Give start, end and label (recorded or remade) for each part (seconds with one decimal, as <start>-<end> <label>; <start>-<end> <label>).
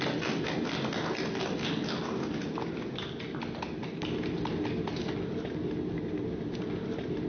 0.0-7.3 recorded